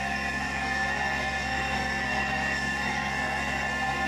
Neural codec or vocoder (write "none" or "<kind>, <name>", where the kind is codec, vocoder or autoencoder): codec, SNAC